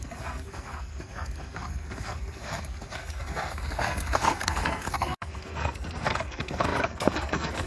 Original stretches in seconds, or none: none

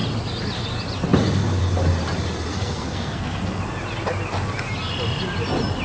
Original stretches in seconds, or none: 0.0-2.5; 3.6-5.8